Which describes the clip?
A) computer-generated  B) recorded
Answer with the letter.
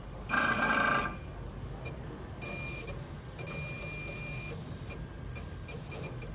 B